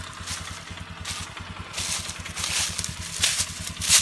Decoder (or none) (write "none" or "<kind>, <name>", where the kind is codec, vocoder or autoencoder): none